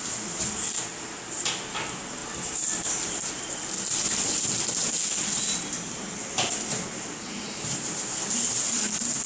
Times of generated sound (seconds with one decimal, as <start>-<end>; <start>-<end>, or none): none